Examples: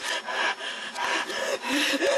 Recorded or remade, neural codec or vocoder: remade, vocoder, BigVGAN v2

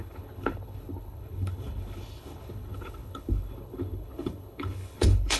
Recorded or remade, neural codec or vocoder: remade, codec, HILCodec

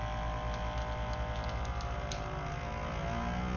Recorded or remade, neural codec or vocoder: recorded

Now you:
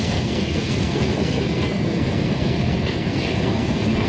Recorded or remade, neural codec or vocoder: remade, codec, SNAC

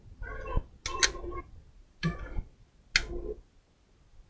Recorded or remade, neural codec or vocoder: recorded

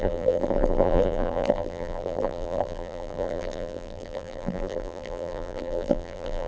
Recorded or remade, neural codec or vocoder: remade, vocoder, BigVGAN v2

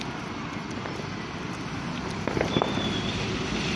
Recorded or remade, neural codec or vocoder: recorded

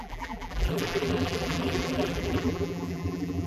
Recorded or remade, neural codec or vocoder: remade, vocoder, BigVGAN v2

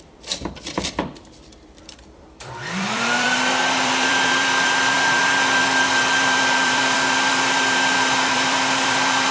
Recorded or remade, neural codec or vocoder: remade, vocoder, BigVGAN v2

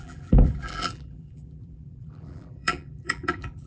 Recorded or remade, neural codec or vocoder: remade, vocoder, BigVGAN v2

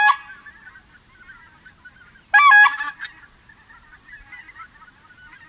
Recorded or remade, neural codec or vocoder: recorded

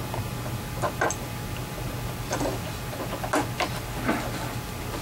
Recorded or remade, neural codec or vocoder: recorded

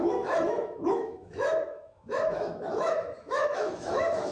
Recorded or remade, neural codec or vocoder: remade, autoencoder, DAC-VAE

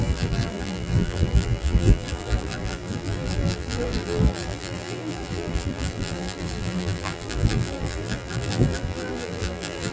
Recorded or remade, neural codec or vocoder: remade, vocoder, BigVGAN v2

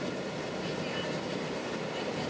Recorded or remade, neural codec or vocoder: remade, vocoder, BigVGAN v2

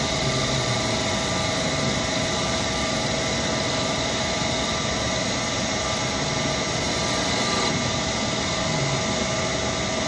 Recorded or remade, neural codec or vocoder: recorded